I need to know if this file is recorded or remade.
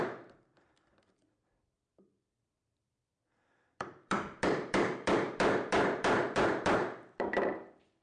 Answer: remade